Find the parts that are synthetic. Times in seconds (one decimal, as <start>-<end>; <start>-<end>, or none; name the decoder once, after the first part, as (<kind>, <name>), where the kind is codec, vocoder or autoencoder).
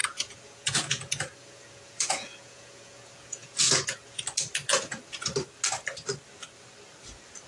0.0-4.2 (vocoder, Vocos); 4.7-5.3